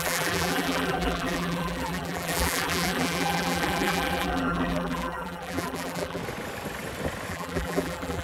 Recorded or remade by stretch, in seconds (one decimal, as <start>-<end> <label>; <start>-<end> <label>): 0.0-6.2 remade; 6.2-7.3 recorded; 7.3-8.2 remade